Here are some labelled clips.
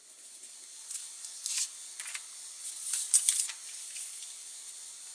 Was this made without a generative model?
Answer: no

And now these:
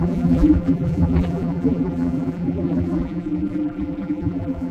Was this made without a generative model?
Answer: no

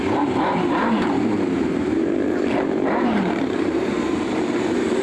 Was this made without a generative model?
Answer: no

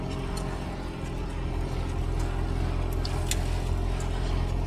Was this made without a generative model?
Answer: yes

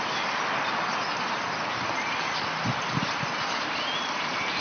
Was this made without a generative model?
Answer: yes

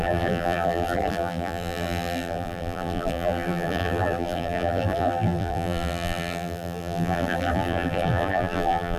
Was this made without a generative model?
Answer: no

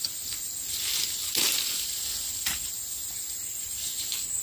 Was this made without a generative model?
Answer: yes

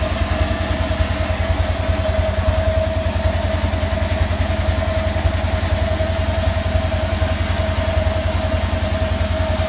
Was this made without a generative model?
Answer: yes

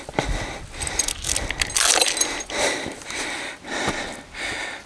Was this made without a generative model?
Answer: yes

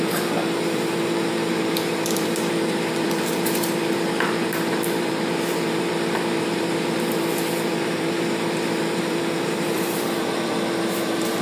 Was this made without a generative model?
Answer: no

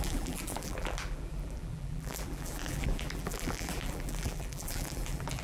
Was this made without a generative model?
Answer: no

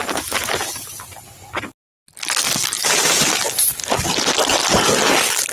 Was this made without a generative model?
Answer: yes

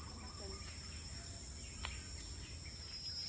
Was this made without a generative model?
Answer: yes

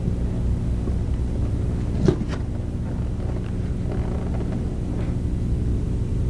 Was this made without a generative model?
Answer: yes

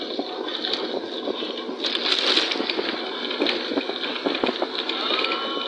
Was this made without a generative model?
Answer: yes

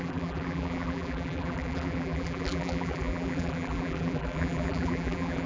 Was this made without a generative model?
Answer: no